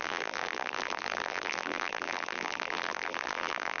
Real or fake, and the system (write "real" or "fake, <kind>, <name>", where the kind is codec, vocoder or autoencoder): fake, vocoder, BigVGAN v2